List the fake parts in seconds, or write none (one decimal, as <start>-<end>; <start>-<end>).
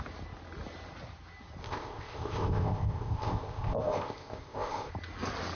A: 1.6-4.9